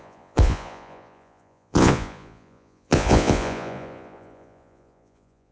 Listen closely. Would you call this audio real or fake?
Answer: fake